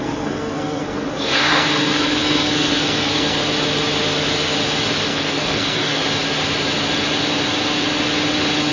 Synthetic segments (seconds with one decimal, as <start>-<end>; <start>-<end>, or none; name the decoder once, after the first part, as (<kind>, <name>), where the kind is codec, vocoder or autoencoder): 0.0-3.4 (codec, SNAC); 5.0-6.0